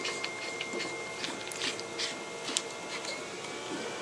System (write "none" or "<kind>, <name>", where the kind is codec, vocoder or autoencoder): none